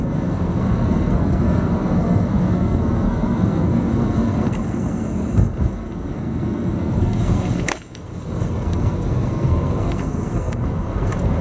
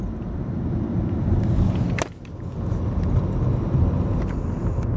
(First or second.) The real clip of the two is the second